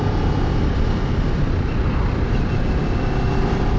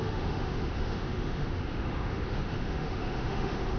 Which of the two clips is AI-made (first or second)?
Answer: second